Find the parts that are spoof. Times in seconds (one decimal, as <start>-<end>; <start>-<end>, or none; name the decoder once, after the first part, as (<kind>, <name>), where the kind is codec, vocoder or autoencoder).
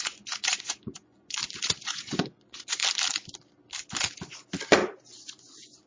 0.0-1.4 (vocoder, Vocos); 1.9-2.8; 5.2-5.9